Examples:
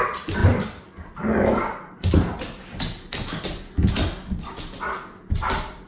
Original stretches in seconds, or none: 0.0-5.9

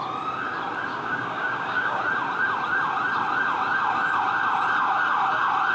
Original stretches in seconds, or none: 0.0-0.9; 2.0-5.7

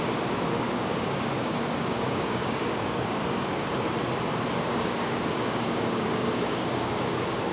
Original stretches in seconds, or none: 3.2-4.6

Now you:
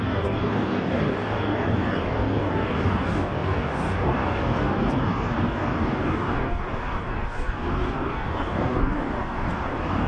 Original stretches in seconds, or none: none

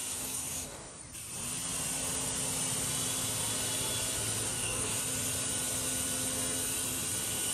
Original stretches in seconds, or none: 1.0-4.5; 5.0-7.5

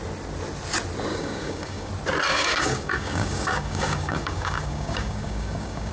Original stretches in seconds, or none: 0.0-1.1; 1.9-2.3